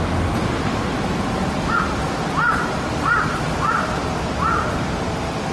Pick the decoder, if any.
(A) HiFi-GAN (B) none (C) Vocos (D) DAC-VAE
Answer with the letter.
B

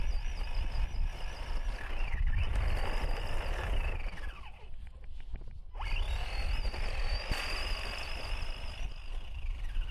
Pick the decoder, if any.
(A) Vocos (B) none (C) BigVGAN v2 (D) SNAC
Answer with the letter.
B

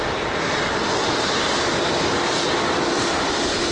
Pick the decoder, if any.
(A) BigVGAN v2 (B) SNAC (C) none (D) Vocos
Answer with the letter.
A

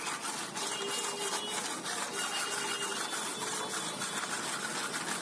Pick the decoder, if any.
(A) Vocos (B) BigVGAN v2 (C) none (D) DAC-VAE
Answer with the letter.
C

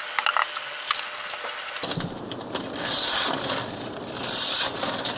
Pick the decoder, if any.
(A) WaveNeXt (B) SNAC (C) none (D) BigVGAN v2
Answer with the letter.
C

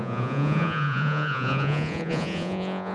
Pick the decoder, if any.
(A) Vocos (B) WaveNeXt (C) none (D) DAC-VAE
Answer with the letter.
A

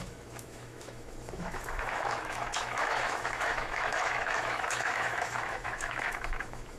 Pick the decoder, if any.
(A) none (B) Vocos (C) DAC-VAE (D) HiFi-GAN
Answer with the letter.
C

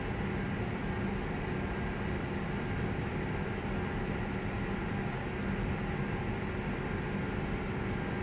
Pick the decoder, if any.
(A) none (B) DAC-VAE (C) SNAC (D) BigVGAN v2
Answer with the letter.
A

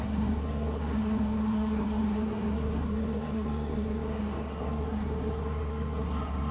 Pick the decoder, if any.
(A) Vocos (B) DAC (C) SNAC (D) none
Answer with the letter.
C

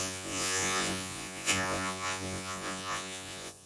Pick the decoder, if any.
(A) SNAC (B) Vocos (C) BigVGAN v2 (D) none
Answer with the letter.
B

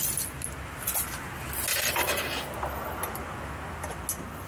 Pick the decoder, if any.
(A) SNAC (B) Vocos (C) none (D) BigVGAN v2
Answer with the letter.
C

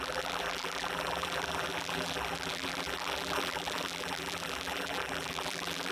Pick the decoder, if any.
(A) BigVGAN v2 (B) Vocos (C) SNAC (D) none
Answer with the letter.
A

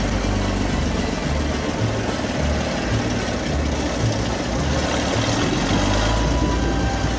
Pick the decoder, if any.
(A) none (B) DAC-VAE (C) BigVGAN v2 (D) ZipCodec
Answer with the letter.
A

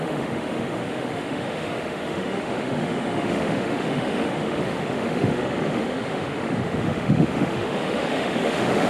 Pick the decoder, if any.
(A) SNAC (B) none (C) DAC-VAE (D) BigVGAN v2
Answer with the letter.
C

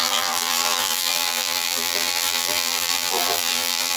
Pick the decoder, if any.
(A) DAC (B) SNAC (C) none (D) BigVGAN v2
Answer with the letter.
D